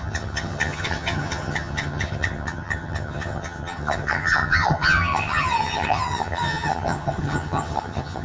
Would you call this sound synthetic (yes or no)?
yes